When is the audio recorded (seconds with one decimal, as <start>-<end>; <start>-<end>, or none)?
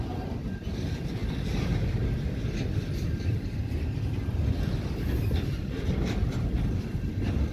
0.0-7.5